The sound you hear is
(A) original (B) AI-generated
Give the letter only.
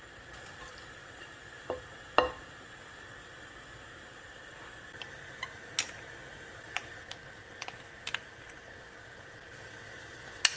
A